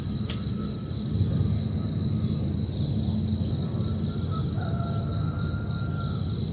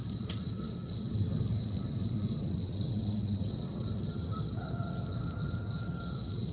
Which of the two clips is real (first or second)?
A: first